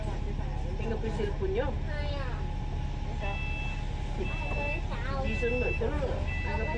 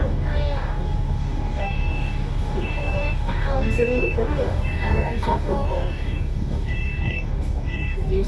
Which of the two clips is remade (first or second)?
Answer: second